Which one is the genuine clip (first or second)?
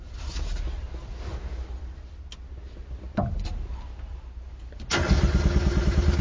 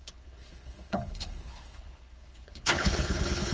first